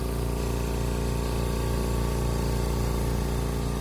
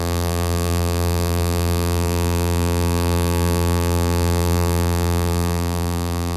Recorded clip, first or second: first